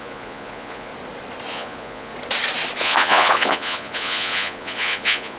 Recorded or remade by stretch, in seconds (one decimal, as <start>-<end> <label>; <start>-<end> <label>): 0.0-0.9 remade; 0.9-1.5 recorded; 1.5-2.1 remade; 2.1-2.8 recorded; 2.8-5.4 remade